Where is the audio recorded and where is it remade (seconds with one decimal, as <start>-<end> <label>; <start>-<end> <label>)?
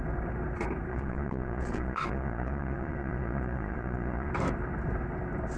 0.0-0.9 recorded; 0.9-4.3 remade; 4.3-5.6 recorded